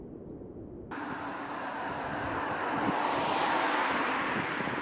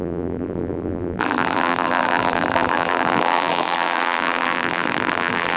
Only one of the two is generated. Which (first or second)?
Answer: second